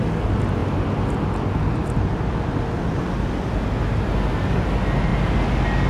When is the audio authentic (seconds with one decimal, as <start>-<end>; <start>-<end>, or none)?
0.0-5.9